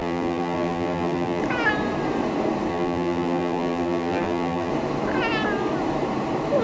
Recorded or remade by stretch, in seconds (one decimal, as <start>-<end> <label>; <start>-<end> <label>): 0.0-1.4 remade; 1.4-2.7 recorded; 2.7-4.7 remade; 4.7-6.6 recorded